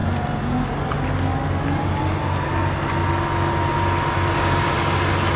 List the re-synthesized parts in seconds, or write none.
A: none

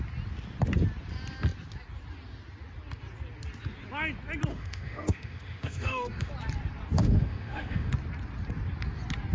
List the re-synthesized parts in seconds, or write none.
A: 4.5-6.3 (autoencoder, DAC-VAE); 7.0-7.9

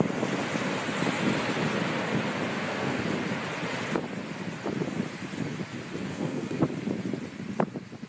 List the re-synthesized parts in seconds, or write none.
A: 2.5-3.0 (codec, SNAC); 6.1-6.6

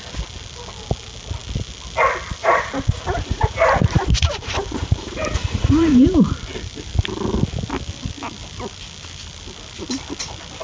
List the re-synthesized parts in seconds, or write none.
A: 2.4-6.3 (vocoder, BigVGAN v2)

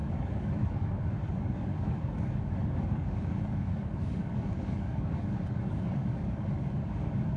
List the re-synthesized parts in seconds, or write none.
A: 0.0-7.4 (codec, DAC)

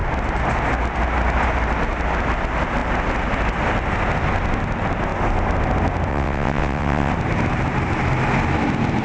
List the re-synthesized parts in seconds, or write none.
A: 6.1-7.1 (vocoder, WaveNeXt)